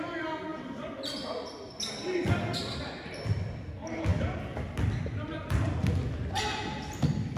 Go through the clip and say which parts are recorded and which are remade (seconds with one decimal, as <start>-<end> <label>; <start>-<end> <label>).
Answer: 0.0-7.4 recorded